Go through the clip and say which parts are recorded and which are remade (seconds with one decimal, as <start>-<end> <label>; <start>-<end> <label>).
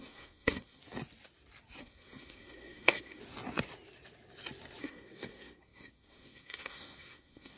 0.0-0.8 remade; 0.8-1.8 recorded; 1.8-3.2 remade; 3.2-4.8 recorded; 4.8-7.6 remade